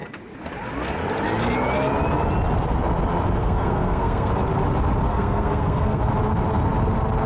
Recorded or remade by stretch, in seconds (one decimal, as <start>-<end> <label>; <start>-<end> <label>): 0.0-3.4 recorded; 3.4-4.3 remade; 4.3-5.1 recorded; 5.1-6.0 remade; 6.0-7.3 recorded